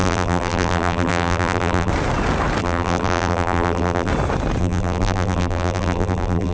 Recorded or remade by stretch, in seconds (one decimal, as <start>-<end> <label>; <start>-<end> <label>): 0.0-1.9 remade; 1.9-2.6 recorded; 2.6-4.1 remade; 4.1-4.6 recorded; 4.6-6.5 remade